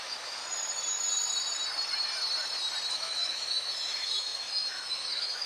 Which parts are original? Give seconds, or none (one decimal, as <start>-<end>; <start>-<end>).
0.4-2.9